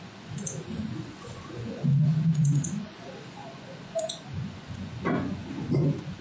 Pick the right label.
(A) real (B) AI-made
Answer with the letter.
B